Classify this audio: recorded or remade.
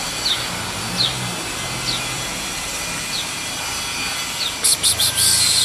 recorded